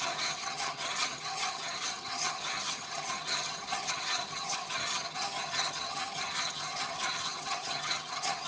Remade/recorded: remade